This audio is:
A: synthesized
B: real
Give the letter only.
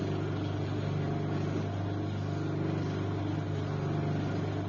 B